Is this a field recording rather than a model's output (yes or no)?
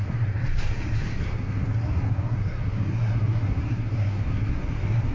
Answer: no